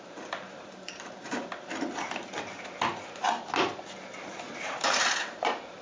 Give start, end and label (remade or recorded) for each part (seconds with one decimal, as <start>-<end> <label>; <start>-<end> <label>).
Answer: 0.0-1.5 remade; 1.5-4.3 recorded; 4.3-5.8 remade